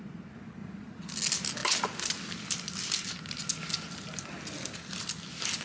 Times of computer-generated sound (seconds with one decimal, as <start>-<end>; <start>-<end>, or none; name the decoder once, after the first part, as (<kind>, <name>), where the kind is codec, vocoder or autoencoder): 0.6-1.1 (vocoder, Vocos)